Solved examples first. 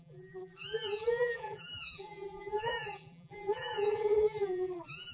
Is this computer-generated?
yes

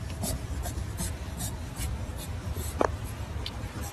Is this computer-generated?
no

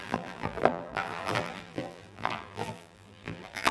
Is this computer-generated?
yes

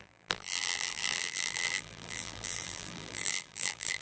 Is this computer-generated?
yes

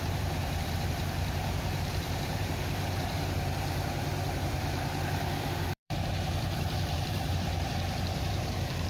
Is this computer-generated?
yes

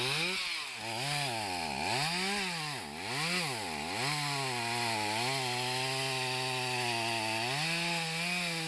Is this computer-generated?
no